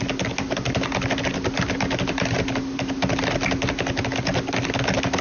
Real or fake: real